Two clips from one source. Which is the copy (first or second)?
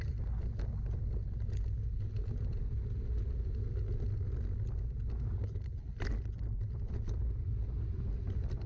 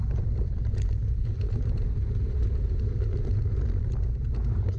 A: second